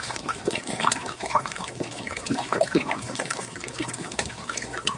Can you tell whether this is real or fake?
fake